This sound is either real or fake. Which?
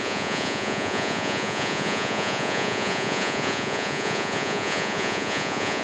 fake